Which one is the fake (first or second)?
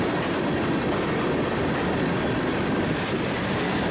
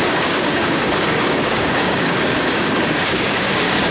second